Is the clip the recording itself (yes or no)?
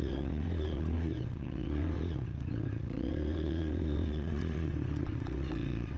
no